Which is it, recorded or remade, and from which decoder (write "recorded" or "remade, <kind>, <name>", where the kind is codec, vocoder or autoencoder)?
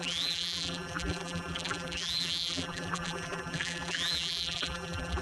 remade, vocoder, BigVGAN v2